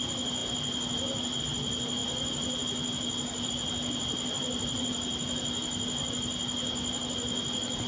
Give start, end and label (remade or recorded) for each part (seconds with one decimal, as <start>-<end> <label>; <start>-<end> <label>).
0.0-7.9 recorded